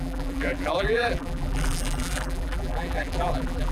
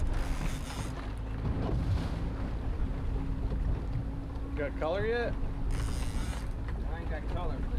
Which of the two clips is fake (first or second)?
first